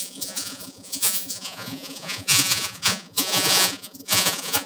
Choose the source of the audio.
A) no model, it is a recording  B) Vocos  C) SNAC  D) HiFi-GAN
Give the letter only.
B